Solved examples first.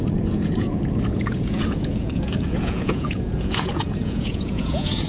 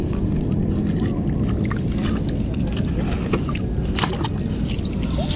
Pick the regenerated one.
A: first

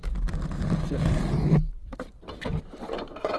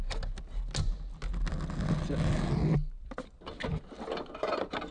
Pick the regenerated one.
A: first